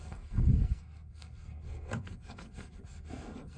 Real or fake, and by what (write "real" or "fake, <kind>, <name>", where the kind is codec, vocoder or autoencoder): fake, codec, SNAC